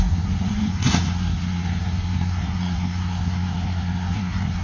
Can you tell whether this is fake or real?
fake